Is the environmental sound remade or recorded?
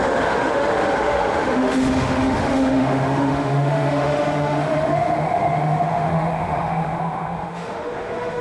remade